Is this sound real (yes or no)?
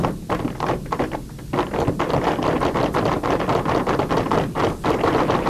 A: yes